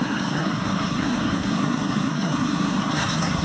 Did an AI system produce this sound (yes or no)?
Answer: yes